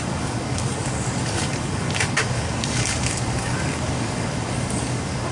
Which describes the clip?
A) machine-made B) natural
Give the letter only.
A